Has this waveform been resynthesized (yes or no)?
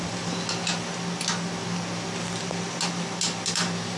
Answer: no